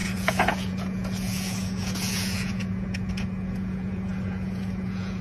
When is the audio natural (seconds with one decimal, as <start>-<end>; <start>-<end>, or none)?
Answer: none